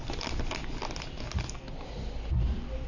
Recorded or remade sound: recorded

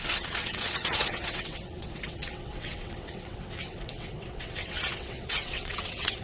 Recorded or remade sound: remade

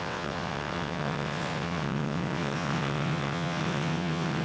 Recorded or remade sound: remade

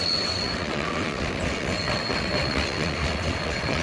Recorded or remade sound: remade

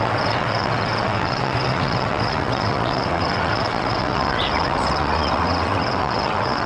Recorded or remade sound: remade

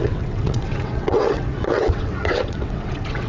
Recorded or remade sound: remade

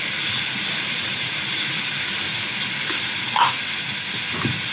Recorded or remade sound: recorded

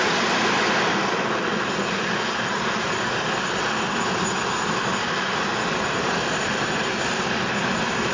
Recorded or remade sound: recorded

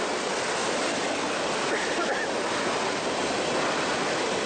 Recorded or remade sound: recorded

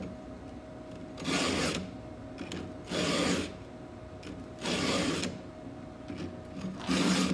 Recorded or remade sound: recorded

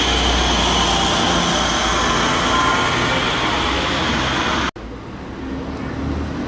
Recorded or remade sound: recorded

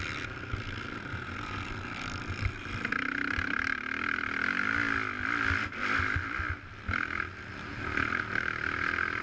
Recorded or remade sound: recorded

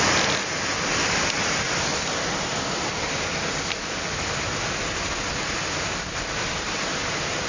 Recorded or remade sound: recorded